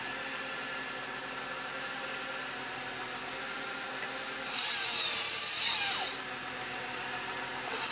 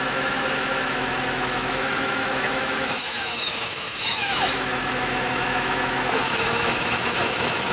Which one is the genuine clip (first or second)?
first